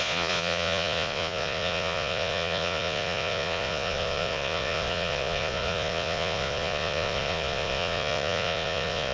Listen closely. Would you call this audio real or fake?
fake